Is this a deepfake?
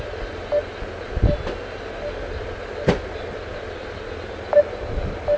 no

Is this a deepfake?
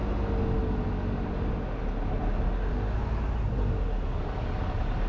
no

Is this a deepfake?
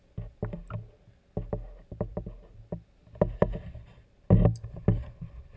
no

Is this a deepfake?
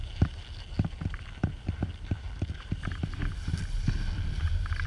no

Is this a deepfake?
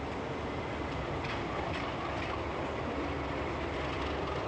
no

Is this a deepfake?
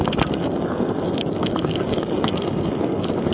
yes